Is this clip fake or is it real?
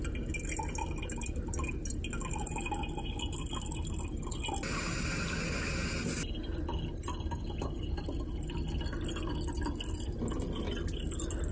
real